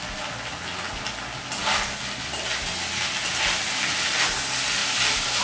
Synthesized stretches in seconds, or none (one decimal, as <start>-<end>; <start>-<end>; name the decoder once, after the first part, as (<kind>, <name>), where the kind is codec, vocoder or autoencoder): 4.8-5.4 (vocoder, BigVGAN v2)